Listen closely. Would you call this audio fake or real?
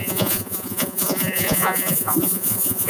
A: fake